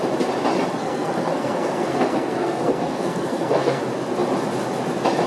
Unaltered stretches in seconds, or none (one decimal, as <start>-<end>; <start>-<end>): 0.0-0.8; 3.8-5.3